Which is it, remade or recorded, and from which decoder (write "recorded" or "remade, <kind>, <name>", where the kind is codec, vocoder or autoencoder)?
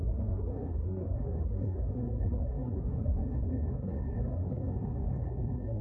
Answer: remade, codec, SNAC